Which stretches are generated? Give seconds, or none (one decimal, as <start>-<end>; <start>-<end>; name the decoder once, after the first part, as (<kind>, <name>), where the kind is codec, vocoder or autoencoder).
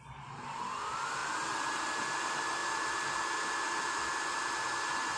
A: none